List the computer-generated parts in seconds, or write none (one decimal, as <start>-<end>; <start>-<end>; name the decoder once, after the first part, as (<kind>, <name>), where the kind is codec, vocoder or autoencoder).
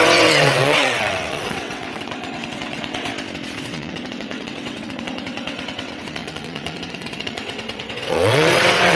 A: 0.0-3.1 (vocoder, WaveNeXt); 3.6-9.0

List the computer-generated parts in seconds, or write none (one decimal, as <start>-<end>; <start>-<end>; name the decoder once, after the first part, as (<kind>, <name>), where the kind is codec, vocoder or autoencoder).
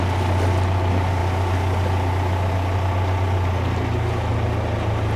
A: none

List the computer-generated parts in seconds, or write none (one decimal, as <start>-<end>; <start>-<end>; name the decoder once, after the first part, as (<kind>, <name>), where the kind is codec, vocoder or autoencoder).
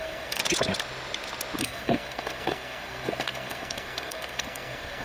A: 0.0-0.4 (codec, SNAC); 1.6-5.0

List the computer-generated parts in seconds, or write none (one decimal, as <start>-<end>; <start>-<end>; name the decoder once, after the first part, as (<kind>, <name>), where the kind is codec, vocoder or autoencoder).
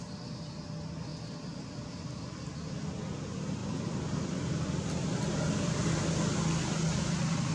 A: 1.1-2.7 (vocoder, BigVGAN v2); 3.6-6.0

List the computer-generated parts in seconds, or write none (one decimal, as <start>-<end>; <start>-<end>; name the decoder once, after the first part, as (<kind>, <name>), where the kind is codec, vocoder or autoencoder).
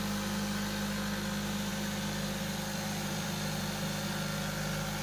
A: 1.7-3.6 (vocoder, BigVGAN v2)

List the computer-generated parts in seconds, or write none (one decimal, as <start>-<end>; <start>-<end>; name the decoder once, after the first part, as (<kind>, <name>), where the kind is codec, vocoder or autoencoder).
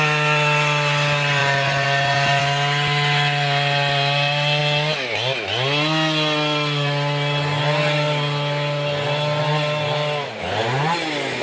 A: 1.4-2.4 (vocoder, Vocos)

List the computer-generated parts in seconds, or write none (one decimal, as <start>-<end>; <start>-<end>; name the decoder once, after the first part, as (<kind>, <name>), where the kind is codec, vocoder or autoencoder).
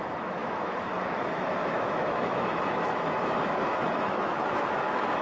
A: 0.0-5.2 (autoencoder, DAC-VAE)